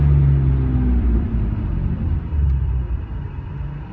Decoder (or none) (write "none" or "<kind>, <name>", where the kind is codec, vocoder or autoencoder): vocoder, BigVGAN v2